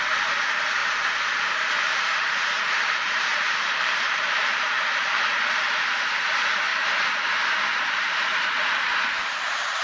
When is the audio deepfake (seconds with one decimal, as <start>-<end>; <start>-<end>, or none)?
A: 0.8-5.2; 6.7-8.4